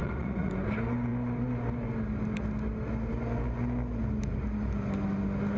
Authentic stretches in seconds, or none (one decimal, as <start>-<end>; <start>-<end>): 0.5-5.6